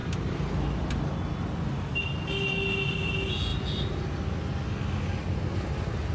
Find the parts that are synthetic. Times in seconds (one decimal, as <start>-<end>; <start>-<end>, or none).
0.0-0.5